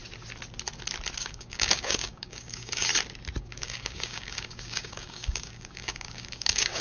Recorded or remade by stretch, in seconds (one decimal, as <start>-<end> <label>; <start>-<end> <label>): 0.0-1.2 recorded; 1.2-2.9 remade; 2.9-3.4 recorded; 3.4-6.8 remade